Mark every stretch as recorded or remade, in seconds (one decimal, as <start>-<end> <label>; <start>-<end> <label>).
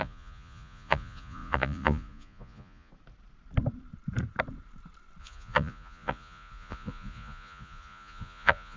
0.0-2.9 remade; 2.9-5.2 recorded; 5.2-8.8 remade